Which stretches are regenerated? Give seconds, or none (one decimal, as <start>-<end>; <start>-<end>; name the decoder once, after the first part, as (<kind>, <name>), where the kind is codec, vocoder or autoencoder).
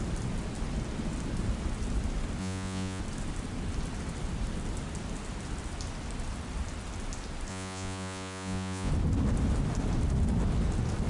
2.4-3.0 (vocoder, Vocos); 7.5-8.9